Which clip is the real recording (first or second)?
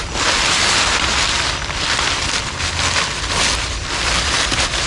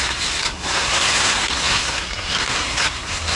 first